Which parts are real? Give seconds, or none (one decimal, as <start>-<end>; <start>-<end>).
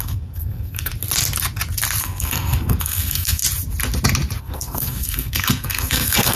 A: 0.9-2.0; 3.4-4.4